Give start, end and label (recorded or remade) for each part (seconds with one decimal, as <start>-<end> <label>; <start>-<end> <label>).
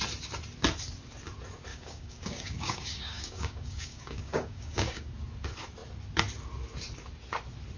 0.0-1.7 recorded; 1.7-5.1 remade; 5.1-7.8 recorded